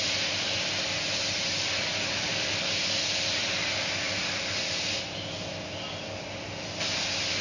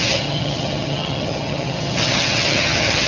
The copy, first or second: second